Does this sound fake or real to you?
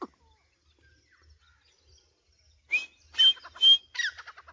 real